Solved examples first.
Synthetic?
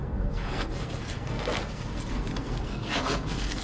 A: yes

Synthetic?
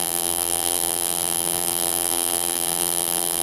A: yes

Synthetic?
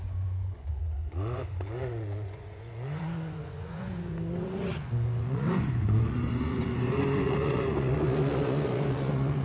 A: yes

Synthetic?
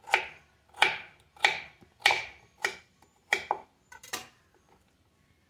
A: yes